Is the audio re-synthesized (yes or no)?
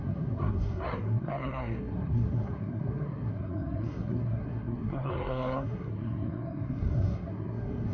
yes